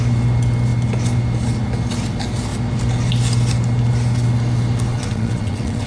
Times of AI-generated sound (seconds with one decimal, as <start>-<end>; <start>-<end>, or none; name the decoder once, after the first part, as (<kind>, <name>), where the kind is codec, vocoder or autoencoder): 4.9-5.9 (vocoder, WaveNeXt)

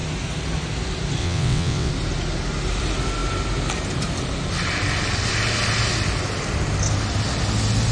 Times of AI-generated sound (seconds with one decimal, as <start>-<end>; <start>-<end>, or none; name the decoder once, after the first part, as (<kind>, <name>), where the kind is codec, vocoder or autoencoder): 1.2-1.9 (vocoder, WaveNeXt)

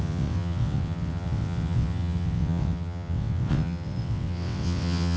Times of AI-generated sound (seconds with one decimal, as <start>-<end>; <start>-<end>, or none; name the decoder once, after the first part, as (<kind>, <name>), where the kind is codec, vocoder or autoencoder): 0.0-5.2 (vocoder, WaveNeXt)